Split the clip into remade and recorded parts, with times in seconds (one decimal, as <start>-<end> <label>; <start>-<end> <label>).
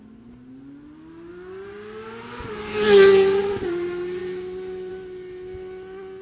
0.0-6.2 recorded